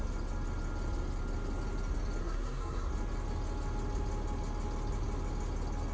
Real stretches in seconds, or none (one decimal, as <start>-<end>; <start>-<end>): 0.0-2.2; 2.9-5.9